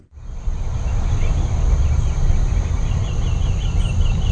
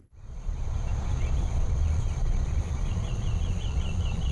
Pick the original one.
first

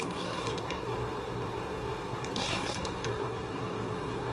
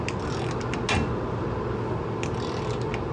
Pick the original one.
second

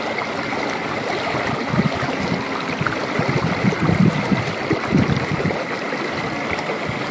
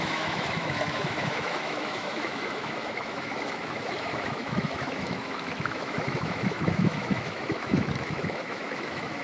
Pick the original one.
first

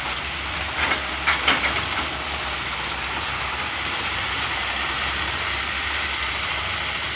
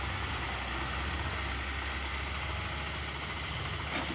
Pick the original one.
second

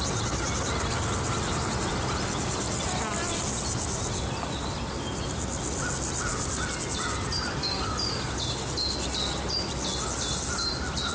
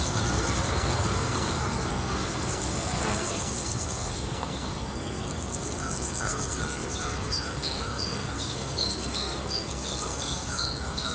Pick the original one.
first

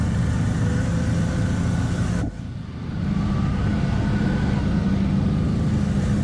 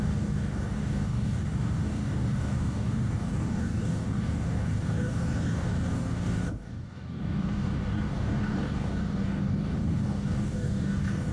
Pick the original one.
first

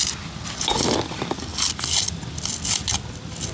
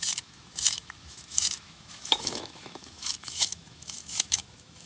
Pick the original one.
first